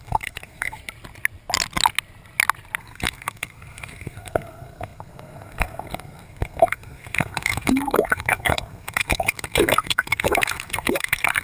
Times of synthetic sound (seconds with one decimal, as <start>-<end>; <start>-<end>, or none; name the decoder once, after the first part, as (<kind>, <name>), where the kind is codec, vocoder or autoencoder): 0.0-0.8 (codec, SNAC); 2.8-11.4